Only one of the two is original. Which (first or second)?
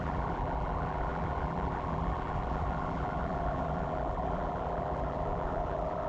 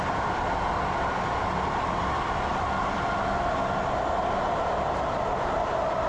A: second